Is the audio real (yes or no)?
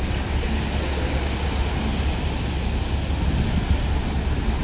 yes